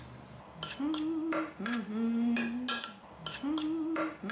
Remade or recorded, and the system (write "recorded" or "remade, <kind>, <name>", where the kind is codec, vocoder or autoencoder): recorded